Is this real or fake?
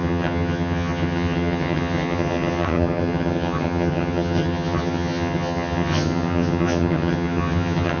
fake